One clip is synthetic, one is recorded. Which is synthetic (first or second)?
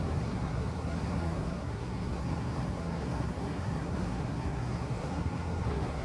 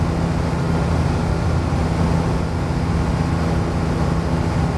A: first